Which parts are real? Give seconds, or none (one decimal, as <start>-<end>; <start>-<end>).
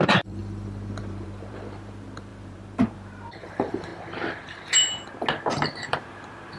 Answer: 0.4-1.0; 3.9-5.9